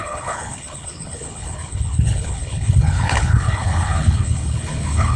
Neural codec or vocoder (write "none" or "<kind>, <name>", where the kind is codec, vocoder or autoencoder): codec, HILCodec